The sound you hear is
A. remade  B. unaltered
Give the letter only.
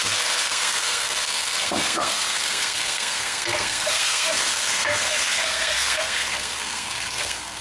A